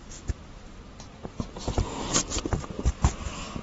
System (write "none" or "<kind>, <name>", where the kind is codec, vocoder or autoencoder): none